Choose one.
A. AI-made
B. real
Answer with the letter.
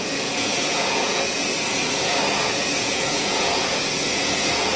A